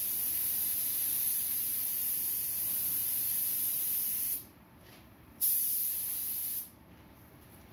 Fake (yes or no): yes